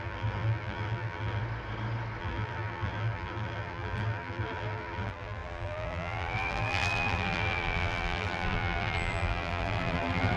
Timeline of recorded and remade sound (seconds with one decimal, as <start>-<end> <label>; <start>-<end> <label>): 0.0-1.4 remade; 1.4-2.2 recorded; 2.2-10.4 remade